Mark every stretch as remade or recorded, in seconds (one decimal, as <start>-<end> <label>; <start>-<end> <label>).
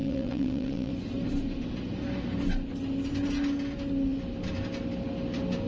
0.0-0.9 remade; 0.9-5.7 recorded